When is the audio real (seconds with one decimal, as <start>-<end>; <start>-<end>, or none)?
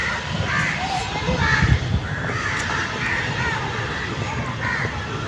0.0-5.3